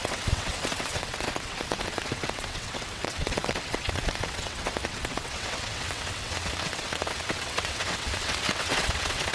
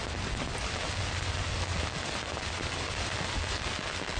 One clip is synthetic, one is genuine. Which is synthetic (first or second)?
first